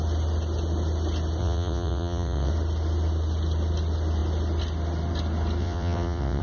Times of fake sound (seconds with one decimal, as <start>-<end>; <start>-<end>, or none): 1.4-2.5; 5.6-6.4